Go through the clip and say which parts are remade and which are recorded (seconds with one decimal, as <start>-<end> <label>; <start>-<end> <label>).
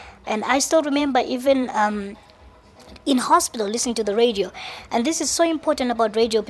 0.0-1.0 recorded; 1.0-2.8 remade; 2.8-3.9 recorded; 3.9-4.9 remade; 4.9-6.5 recorded